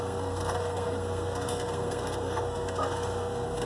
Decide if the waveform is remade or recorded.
remade